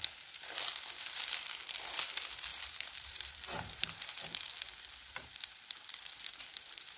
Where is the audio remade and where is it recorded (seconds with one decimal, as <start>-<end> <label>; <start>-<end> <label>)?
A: 0.0-2.5 recorded; 2.5-4.2 remade; 4.2-7.0 recorded